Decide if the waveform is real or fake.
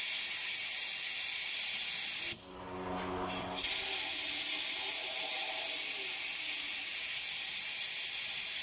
real